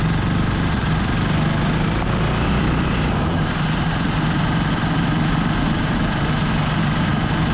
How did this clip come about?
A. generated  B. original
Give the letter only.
B